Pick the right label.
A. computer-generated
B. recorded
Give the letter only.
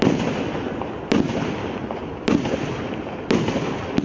B